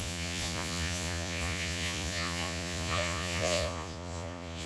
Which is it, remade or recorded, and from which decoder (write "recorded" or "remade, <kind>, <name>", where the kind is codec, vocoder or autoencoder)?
remade, vocoder, Vocos